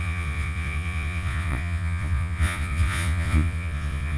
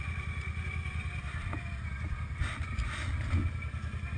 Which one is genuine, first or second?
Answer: second